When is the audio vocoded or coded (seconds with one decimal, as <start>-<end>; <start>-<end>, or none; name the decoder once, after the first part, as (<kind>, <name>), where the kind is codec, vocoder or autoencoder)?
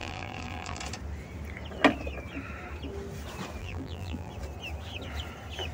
0.0-0.8 (vocoder, BigVGAN v2); 3.6-4.3